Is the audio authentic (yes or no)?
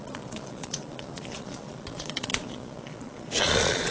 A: no